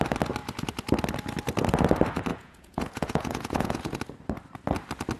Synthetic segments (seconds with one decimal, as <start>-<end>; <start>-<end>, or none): 2.3-4.0